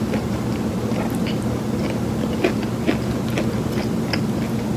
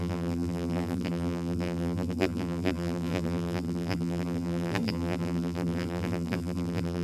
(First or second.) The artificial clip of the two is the second